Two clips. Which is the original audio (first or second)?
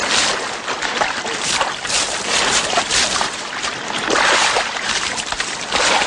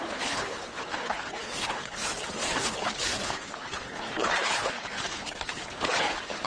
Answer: first